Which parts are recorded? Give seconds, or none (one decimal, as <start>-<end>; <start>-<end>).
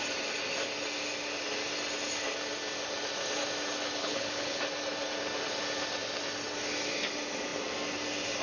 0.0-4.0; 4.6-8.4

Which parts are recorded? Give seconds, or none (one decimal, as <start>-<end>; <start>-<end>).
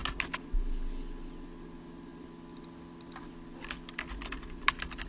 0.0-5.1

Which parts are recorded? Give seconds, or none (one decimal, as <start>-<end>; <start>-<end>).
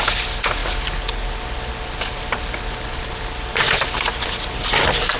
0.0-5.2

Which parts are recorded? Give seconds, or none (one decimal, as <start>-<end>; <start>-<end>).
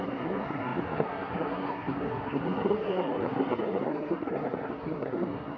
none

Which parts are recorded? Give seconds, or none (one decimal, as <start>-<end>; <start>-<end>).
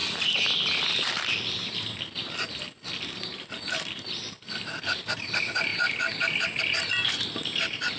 0.0-8.0